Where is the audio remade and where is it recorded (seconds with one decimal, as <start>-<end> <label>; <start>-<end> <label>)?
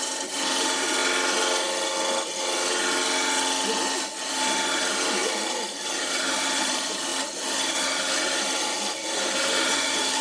0.0-1.0 remade; 1.0-4.3 recorded; 4.3-5.2 remade; 5.2-6.0 recorded; 6.0-7.1 remade; 7.1-8.3 recorded; 8.3-10.2 remade